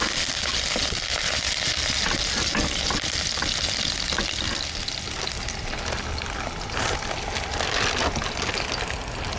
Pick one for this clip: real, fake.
real